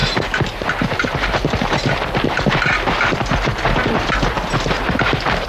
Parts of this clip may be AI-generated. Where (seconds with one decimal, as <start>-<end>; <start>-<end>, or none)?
0.0-5.5